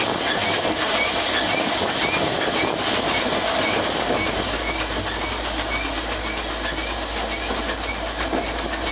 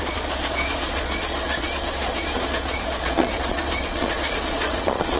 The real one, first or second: first